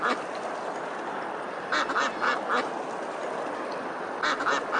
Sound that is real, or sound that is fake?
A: real